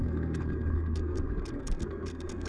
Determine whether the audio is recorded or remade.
remade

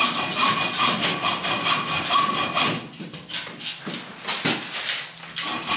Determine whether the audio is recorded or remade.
recorded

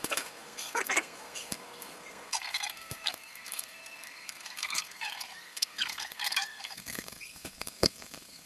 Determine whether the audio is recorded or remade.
remade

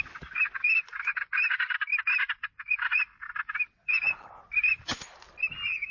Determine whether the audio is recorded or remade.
recorded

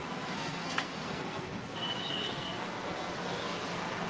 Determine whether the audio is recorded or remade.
remade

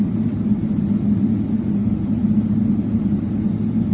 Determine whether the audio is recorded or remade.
recorded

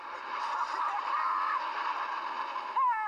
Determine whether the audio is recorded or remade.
recorded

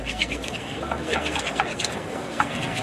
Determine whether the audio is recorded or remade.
remade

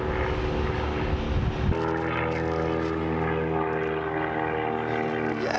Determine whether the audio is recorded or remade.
recorded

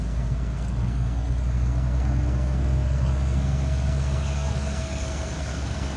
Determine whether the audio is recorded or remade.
remade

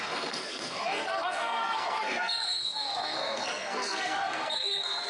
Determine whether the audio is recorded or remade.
remade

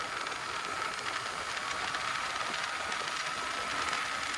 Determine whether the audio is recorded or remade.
recorded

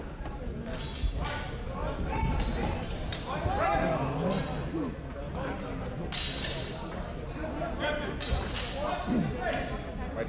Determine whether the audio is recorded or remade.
recorded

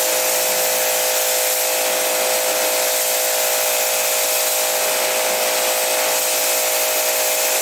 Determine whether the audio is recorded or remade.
recorded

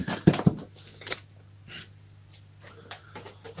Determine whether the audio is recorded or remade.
recorded